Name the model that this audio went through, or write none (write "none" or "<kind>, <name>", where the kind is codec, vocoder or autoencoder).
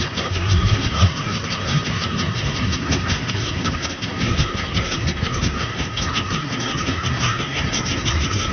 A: codec, SNAC